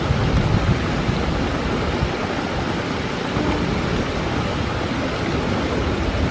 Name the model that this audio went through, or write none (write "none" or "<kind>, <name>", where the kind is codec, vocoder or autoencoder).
none